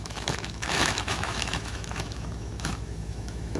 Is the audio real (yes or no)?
no